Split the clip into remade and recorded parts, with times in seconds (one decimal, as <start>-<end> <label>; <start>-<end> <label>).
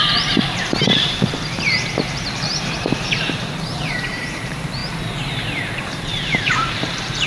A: 0.0-4.8 remade; 4.8-5.8 recorded; 5.8-7.3 remade